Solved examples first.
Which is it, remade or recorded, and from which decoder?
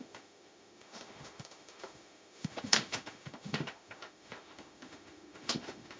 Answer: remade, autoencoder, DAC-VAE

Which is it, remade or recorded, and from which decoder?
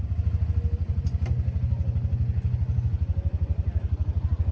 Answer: recorded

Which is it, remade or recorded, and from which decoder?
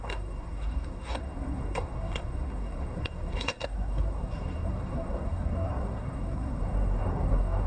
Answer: remade, codec, SNAC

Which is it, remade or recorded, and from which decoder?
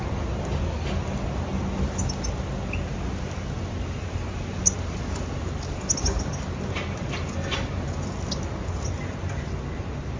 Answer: recorded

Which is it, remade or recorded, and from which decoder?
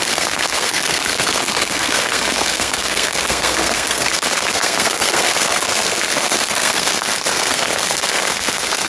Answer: remade, codec, SNAC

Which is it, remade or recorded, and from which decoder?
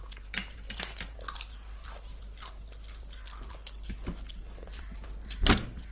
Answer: recorded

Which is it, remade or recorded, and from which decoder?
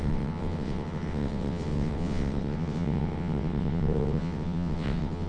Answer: remade, vocoder, WaveNeXt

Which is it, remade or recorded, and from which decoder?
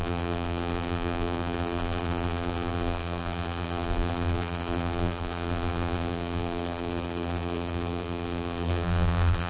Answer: remade, vocoder, BigVGAN v2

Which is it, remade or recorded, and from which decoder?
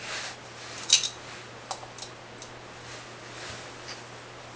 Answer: recorded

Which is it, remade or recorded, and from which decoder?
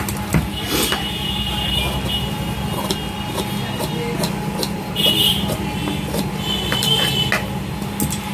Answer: recorded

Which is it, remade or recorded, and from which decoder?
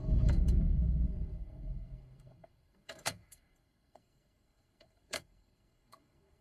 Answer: remade, codec, SNAC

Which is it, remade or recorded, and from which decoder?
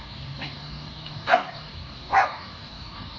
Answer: remade, codec, DAC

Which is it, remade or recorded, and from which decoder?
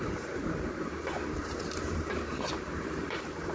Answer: remade, vocoder, BigVGAN v2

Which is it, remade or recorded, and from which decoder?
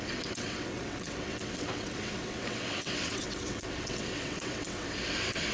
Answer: remade, vocoder, WaveNeXt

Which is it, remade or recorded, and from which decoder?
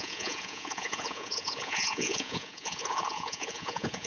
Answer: remade, vocoder, Vocos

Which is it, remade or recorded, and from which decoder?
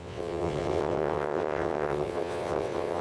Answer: remade, vocoder, WaveNeXt